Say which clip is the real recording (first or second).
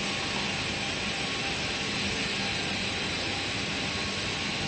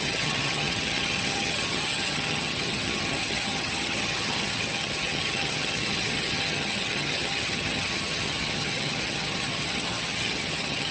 first